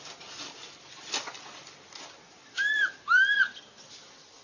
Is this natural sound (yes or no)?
yes